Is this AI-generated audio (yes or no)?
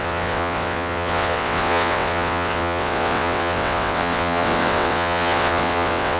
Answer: yes